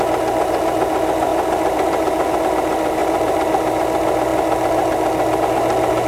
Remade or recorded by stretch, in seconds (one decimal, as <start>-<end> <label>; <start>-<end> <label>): 0.0-1.3 recorded; 1.3-2.4 remade; 2.4-3.0 recorded; 3.0-3.5 remade; 3.5-6.1 recorded